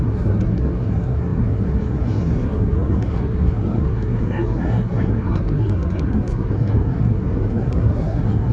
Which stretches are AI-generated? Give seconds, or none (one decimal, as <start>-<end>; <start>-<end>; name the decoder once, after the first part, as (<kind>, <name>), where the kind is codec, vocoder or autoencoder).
0.0-8.5 (codec, SNAC)